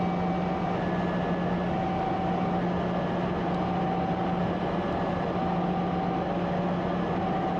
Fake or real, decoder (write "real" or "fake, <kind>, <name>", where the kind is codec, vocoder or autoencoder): real